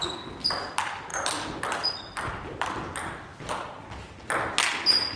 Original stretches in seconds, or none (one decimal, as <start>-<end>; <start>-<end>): 0.0-5.2